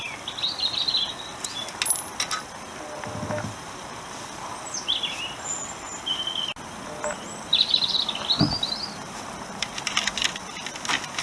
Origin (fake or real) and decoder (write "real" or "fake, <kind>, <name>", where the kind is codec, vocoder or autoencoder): real